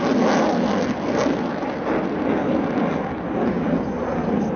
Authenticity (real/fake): real